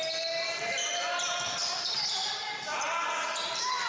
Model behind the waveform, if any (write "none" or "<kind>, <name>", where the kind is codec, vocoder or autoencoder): none